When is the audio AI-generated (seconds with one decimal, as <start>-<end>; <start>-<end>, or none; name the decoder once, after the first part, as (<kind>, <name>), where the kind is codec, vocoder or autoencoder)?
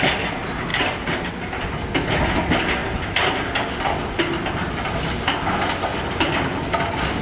0.7-1.3 (vocoder, BigVGAN v2); 2.8-3.5